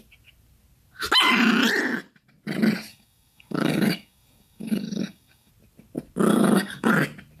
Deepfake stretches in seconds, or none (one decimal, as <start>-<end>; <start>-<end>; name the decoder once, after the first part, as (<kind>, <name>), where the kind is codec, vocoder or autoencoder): 2.9-5.5 (codec, DAC); 6.3-6.9